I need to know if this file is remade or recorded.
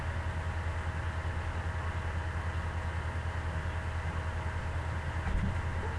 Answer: recorded